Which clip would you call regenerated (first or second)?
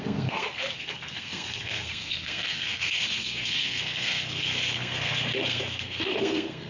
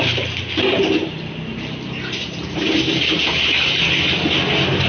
first